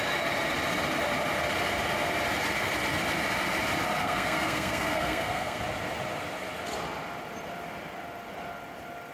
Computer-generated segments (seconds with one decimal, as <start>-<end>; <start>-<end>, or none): 4.0-5.6